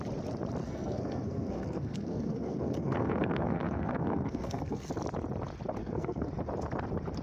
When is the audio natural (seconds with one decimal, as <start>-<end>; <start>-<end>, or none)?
0.0-0.6; 4.9-5.8; 6.3-7.2